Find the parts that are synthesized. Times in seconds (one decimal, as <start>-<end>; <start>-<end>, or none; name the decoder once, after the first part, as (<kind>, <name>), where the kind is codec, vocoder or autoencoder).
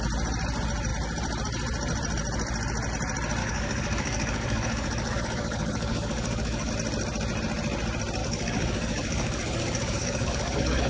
3.4-6.7 (codec, DAC); 8.2-10.9